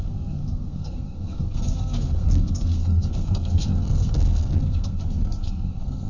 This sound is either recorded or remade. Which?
remade